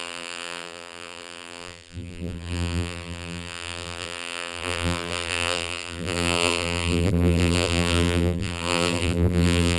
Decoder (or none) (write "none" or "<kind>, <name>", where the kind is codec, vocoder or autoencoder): vocoder, BigVGAN v2